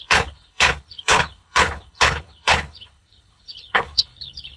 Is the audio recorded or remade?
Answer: remade